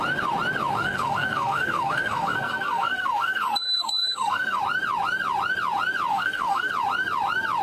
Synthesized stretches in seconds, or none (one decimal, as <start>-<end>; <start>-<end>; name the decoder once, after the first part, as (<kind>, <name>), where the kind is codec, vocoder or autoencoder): 0.8-4.6 (codec, SNAC); 6.1-6.7